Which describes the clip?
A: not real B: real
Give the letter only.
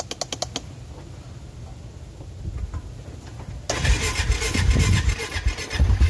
B